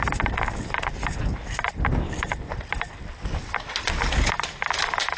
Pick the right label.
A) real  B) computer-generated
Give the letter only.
A